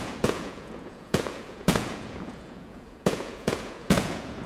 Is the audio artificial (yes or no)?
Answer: yes